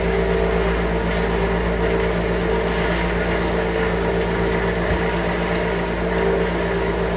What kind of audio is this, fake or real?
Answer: real